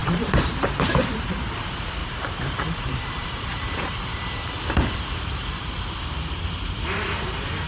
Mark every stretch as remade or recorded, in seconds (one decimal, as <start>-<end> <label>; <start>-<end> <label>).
0.0-1.3 remade; 1.3-2.0 recorded; 2.0-5.8 remade; 5.8-7.7 recorded